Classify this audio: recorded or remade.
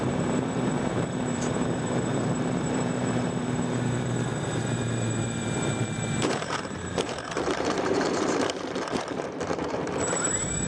remade